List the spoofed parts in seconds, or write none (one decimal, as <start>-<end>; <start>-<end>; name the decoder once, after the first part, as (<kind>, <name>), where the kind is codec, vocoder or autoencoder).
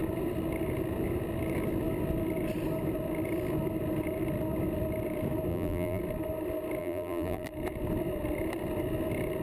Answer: 5.5-6.0 (vocoder, BigVGAN v2); 6.8-7.5